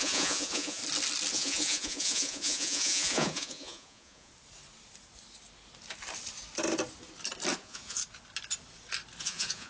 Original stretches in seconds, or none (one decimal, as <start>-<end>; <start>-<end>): 0.8-1.3; 4.3-7.5; 8.0-9.2